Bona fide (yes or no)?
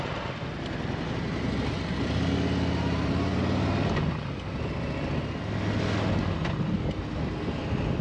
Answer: yes